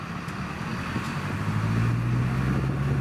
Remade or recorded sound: recorded